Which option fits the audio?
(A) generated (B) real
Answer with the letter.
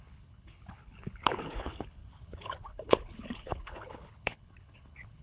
A